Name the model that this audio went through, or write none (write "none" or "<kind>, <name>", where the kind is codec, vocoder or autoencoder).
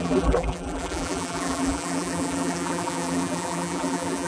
vocoder, BigVGAN v2